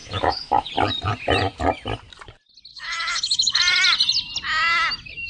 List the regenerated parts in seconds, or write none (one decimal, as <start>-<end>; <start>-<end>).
0.0-0.7; 2.7-3.6